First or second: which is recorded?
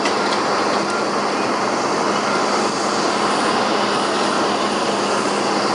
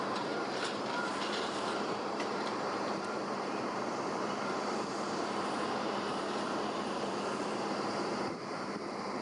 first